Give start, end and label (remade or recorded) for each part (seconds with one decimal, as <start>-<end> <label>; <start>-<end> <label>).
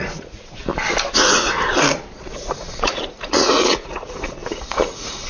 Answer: 0.0-0.7 remade; 0.7-1.2 recorded; 1.2-1.7 remade; 1.7-2.2 recorded; 2.2-5.3 remade